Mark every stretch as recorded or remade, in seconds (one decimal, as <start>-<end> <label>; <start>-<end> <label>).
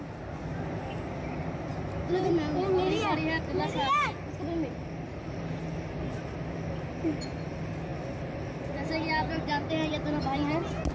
0.0-10.9 recorded